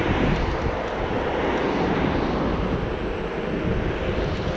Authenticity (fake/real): real